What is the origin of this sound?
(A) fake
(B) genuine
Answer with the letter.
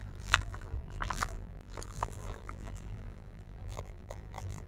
A